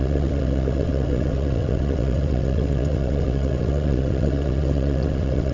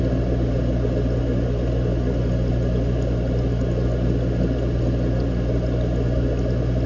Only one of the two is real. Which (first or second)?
second